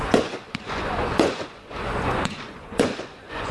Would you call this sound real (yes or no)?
no